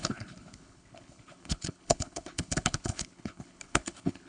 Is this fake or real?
fake